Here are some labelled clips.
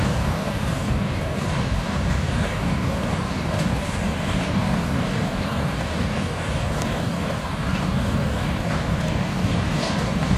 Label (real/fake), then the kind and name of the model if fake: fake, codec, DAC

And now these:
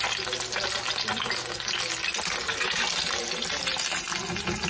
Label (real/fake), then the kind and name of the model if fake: real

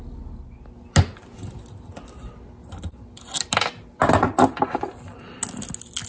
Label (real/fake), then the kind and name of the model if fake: real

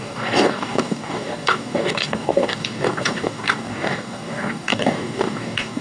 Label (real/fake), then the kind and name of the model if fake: fake, codec, DAC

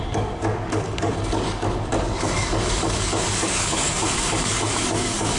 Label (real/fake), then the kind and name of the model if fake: fake, codec, DAC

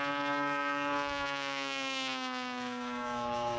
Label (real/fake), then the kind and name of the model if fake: fake, codec, DAC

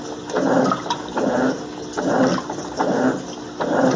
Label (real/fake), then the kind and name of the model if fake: real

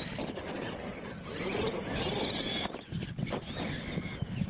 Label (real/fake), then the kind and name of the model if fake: real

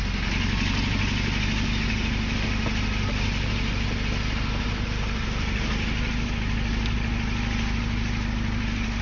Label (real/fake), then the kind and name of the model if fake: real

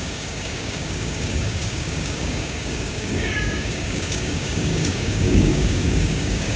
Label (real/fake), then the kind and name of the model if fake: fake, codec, DAC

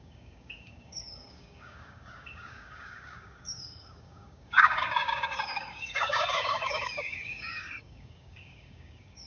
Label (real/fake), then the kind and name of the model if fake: fake, codec, DAC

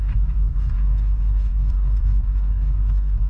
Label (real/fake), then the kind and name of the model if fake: fake, codec, DAC